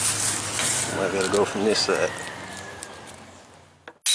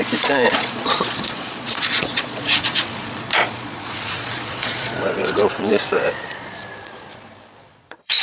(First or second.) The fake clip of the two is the second